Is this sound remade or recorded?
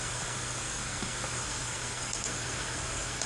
remade